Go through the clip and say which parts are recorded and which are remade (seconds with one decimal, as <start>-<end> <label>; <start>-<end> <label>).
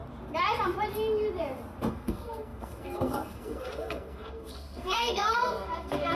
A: 0.0-1.9 recorded; 1.9-6.2 remade